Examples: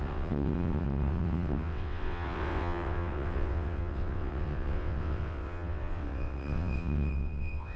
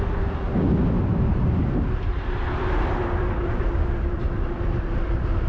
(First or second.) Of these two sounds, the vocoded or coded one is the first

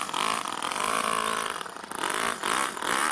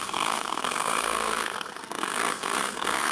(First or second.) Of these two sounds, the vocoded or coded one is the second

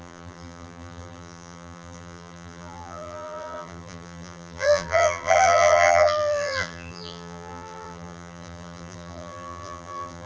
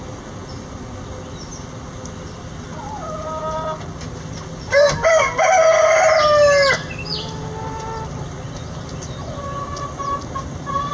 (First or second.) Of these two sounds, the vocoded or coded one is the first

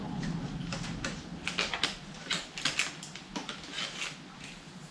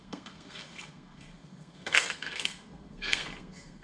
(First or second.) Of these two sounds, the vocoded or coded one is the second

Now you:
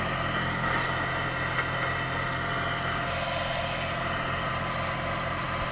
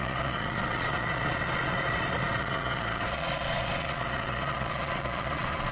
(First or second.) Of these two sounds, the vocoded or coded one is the second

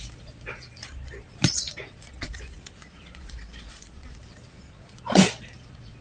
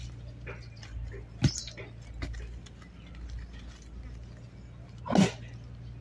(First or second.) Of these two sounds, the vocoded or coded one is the first